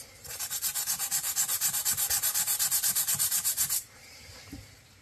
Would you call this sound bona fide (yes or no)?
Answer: no